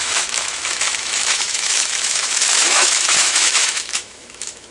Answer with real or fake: fake